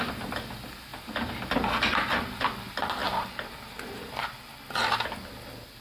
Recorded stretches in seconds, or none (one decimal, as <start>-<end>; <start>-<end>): 0.0-5.8